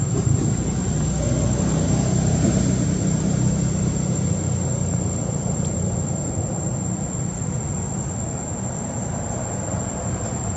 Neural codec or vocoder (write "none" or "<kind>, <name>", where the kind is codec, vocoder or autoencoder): none